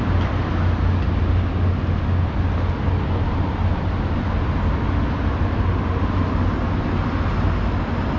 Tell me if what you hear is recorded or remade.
recorded